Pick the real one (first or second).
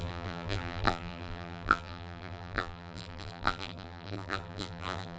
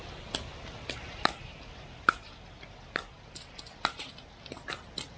second